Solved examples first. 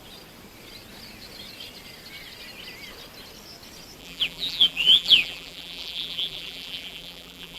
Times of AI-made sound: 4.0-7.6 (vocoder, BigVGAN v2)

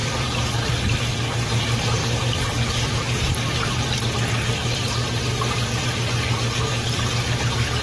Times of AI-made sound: 0.0-0.7 (vocoder, BigVGAN v2); 2.0-4.0; 4.6-7.8

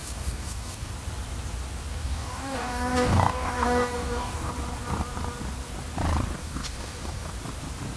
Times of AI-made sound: 0.0-0.9 (codec, DAC); 1.9-4.5; 6.4-7.3